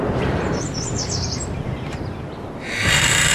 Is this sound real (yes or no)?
no